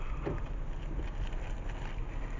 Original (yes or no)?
yes